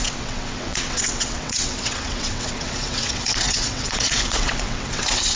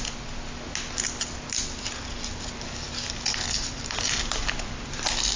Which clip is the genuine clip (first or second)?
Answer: second